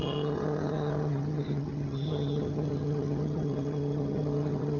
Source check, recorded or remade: remade